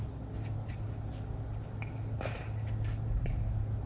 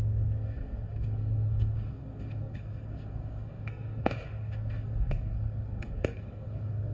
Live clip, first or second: first